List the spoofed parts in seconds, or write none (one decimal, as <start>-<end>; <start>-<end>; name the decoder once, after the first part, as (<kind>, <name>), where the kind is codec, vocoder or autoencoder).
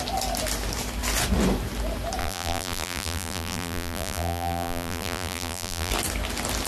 2.2-5.9 (vocoder, BigVGAN v2)